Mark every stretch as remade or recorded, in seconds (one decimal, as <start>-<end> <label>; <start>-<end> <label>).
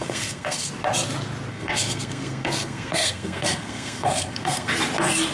0.0-0.7 remade; 0.7-1.5 recorded; 1.5-4.7 remade; 4.7-5.3 recorded